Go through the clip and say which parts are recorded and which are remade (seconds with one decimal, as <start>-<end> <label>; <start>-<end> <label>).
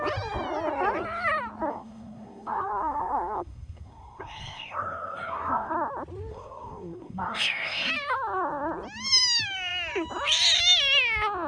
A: 0.0-1.7 recorded; 1.7-5.7 remade; 5.7-6.3 recorded; 6.3-7.9 remade; 7.9-11.5 recorded